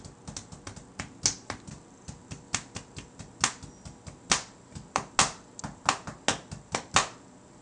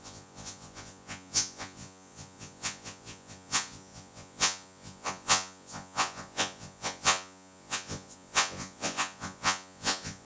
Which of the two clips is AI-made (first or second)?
second